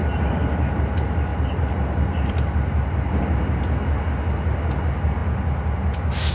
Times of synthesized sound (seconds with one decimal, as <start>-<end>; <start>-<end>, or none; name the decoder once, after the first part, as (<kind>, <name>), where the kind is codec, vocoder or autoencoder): 0.0-0.5 (vocoder, BigVGAN v2); 1.3-3.2